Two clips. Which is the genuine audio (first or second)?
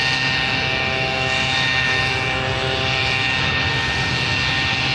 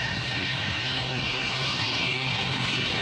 first